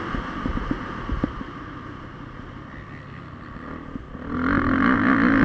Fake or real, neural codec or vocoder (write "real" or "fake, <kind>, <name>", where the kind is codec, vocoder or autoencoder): real